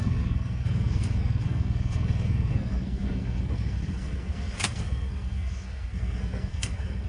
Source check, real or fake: fake